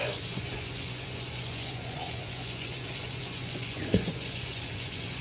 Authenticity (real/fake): fake